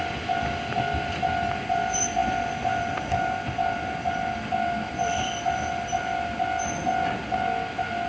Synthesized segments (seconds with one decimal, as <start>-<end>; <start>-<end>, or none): none